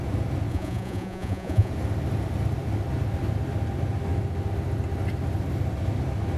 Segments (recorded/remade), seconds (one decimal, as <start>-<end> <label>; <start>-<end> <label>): 0.0-0.5 recorded; 0.5-1.7 remade; 1.7-6.4 recorded